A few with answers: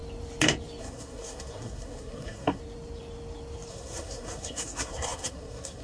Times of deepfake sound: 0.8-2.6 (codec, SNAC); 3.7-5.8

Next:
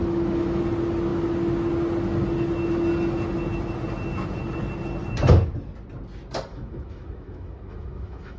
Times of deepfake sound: 0.0-0.6 (autoencoder, DAC-VAE); 6.5-8.4